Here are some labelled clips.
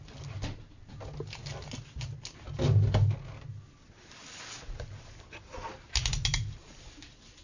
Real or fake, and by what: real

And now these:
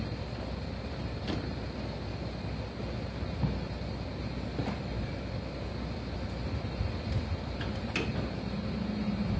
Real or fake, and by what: real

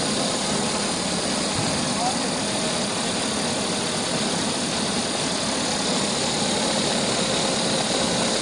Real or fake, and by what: real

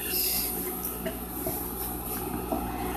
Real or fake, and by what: real